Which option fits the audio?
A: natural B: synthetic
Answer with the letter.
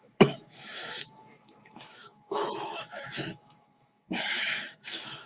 B